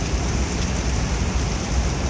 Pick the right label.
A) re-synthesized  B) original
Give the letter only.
B